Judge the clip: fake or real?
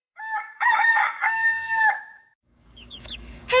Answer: fake